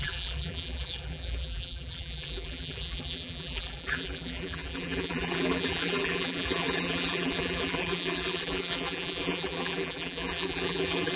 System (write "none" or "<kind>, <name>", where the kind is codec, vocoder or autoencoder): vocoder, BigVGAN v2